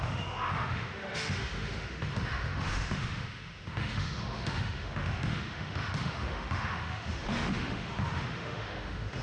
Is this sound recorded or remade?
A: remade